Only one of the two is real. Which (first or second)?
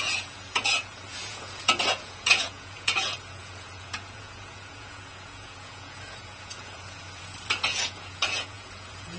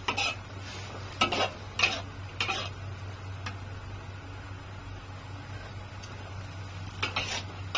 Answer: second